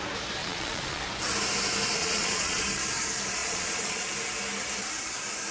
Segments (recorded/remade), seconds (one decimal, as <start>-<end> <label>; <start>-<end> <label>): 0.0-0.4 recorded; 0.4-1.0 remade; 1.0-2.0 recorded; 2.0-2.6 remade; 2.6-3.4 recorded; 3.4-4.1 remade; 4.1-5.5 recorded